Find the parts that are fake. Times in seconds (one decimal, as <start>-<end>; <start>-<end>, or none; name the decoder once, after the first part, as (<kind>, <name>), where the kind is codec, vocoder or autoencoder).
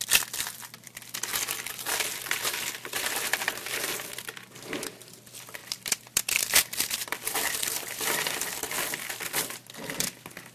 5.6-8.7 (vocoder, BigVGAN v2)